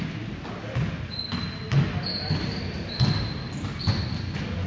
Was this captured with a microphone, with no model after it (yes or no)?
yes